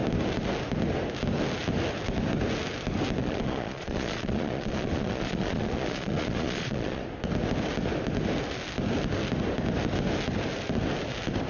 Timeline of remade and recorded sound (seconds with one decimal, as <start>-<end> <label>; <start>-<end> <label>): 0.0-3.2 recorded; 3.2-7.0 remade; 7.0-11.5 recorded